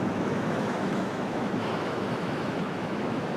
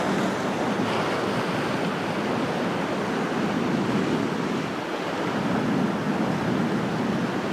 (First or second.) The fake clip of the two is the first